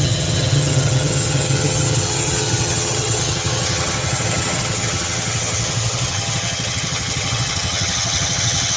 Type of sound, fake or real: fake